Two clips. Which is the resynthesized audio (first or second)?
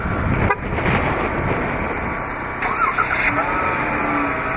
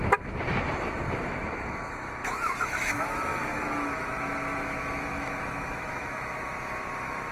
second